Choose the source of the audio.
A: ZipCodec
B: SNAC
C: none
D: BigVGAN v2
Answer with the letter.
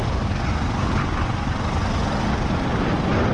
C